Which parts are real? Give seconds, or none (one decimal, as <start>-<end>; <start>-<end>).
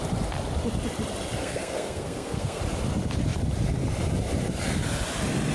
0.0-1.4; 2.6-5.5